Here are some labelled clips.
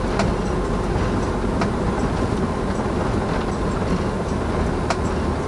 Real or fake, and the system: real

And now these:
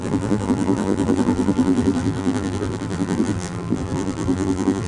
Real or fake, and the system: fake, vocoder, BigVGAN v2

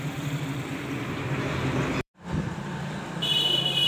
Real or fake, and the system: fake, vocoder, BigVGAN v2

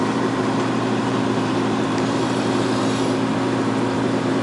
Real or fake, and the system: fake, vocoder, BigVGAN v2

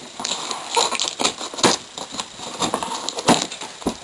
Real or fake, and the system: real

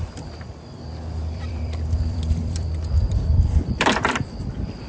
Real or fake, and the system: fake, vocoder, BigVGAN v2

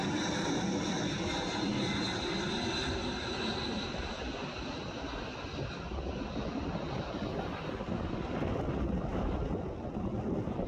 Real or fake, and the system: real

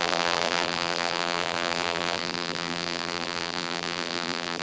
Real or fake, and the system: fake, vocoder, BigVGAN v2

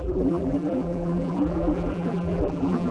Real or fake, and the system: fake, vocoder, BigVGAN v2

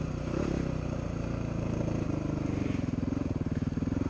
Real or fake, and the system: fake, vocoder, BigVGAN v2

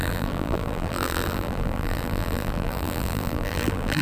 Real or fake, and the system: fake, vocoder, BigVGAN v2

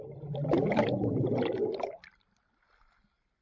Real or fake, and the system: fake, vocoder, BigVGAN v2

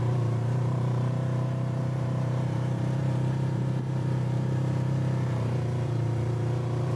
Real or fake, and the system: fake, vocoder, BigVGAN v2